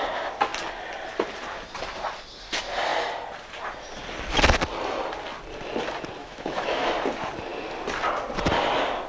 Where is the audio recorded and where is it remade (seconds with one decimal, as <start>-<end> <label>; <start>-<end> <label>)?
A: 0.0-6.2 recorded; 6.2-6.9 remade; 6.9-9.1 recorded